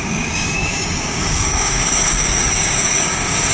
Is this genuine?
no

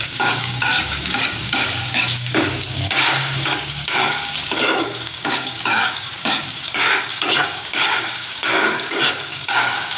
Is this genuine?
no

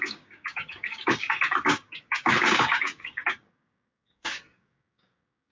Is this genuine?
no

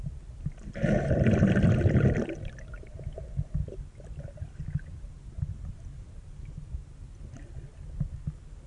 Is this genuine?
yes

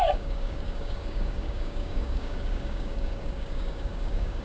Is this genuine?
no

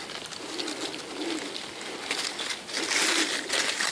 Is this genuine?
yes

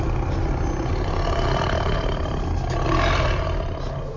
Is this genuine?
yes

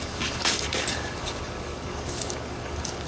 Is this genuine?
no